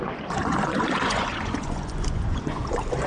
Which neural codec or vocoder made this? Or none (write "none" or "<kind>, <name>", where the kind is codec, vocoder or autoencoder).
vocoder, Vocos